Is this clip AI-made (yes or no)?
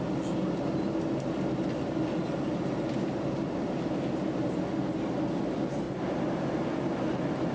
no